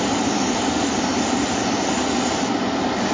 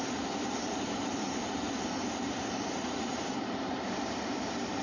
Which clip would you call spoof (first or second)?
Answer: second